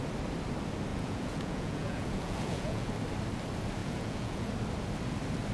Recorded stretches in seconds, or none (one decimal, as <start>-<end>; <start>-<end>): 0.0-0.9; 2.9-3.8; 4.5-5.5